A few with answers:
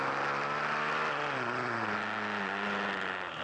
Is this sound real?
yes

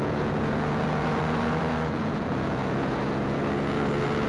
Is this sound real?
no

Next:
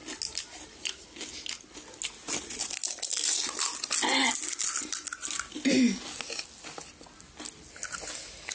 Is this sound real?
yes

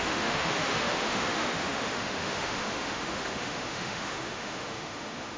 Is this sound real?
no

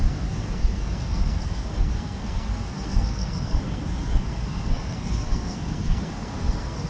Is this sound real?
no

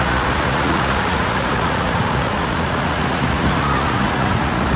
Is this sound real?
no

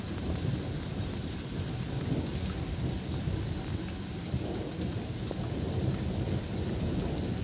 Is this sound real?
yes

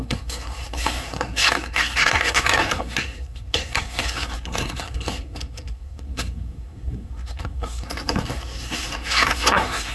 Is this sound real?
no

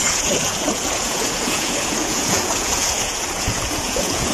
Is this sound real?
no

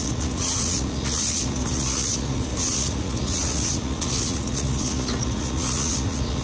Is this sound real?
no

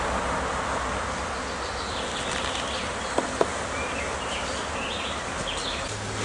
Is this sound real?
yes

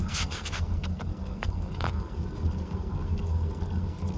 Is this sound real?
no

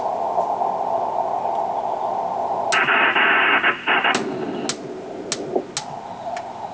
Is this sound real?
yes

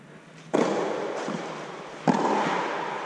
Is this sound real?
yes